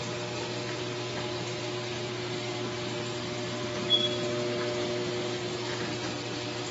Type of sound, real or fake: real